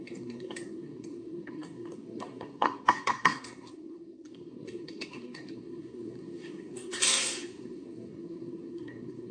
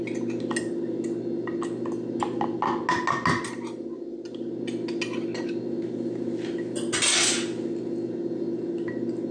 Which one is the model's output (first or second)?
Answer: first